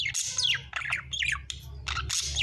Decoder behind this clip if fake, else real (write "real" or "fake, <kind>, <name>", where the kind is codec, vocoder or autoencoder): real